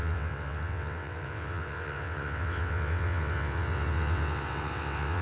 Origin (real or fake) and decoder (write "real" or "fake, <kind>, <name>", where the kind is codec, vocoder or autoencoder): fake, vocoder, WaveNeXt